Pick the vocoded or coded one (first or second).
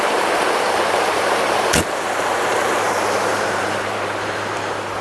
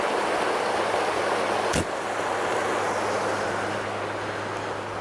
first